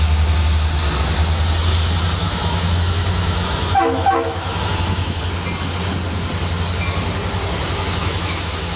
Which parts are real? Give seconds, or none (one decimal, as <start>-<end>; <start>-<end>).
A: 0.0-2.2; 5.2-8.0